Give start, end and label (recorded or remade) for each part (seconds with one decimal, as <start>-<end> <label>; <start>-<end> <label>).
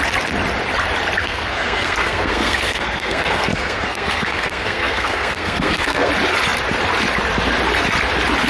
0.0-1.2 recorded; 1.2-6.1 remade; 6.1-8.5 recorded